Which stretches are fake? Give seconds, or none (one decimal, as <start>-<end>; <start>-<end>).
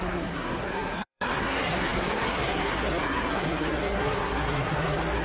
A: 0.0-5.2